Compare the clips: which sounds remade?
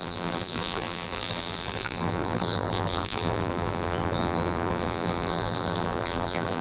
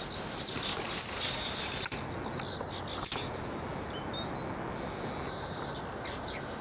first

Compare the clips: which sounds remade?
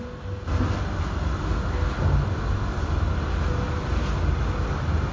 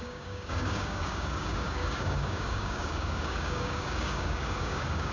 second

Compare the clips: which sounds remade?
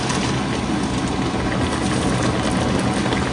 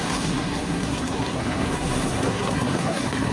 second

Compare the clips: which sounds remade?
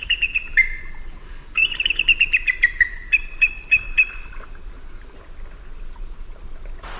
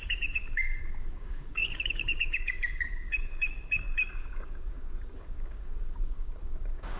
second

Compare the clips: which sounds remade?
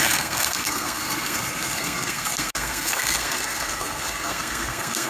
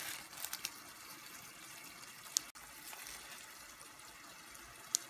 first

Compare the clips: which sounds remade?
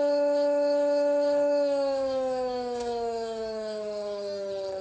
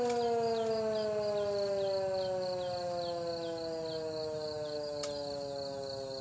first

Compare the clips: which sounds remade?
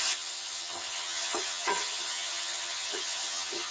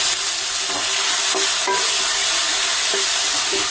first